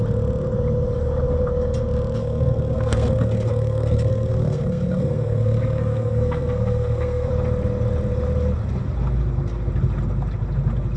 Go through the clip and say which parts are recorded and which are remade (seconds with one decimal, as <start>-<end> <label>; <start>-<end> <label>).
0.0-2.2 recorded; 2.2-7.3 remade; 7.3-11.0 recorded